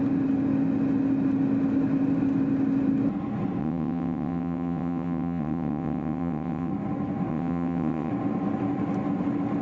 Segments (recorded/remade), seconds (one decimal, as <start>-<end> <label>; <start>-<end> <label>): 0.0-3.6 recorded; 3.6-6.7 remade; 6.7-7.3 recorded; 7.3-8.1 remade; 8.1-9.6 recorded